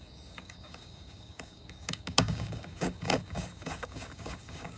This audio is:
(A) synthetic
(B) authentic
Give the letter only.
A